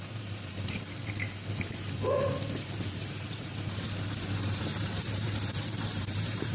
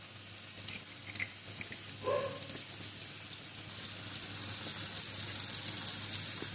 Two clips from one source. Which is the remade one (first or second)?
first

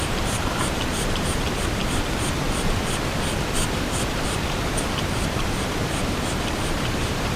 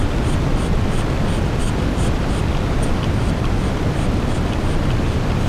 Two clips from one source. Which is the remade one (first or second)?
first